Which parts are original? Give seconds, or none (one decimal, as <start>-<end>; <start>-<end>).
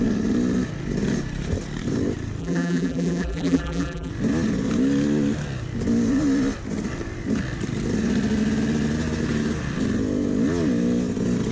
0.0-2.4; 4.1-11.5